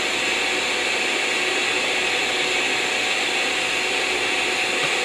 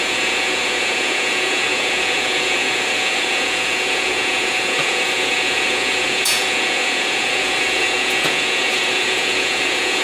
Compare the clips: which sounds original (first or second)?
first